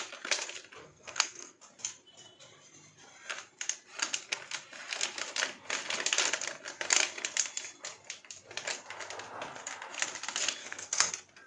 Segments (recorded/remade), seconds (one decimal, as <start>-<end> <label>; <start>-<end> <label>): 0.0-0.8 recorded; 0.8-1.6 remade; 1.6-10.6 recorded; 10.6-11.1 remade; 11.1-11.5 recorded